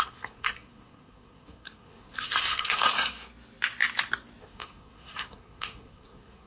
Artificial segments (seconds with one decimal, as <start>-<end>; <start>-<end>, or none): 0.0-3.3; 4.4-6.5